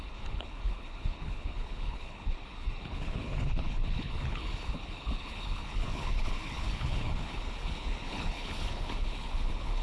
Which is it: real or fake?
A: fake